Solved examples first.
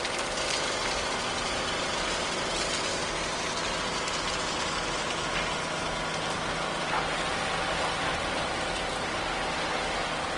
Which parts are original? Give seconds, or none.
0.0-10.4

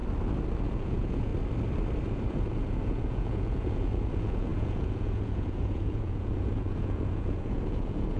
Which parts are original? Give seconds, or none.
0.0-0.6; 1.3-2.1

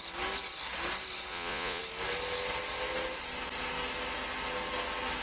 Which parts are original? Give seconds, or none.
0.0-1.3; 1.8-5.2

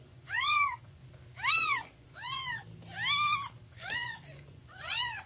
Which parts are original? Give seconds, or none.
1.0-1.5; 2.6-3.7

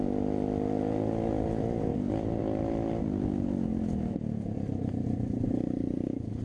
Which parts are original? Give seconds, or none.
0.0-6.4

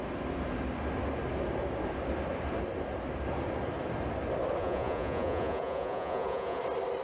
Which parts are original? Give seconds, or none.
0.0-4.6; 6.6-7.0